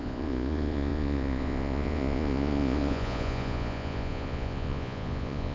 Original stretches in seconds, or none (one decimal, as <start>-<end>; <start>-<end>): none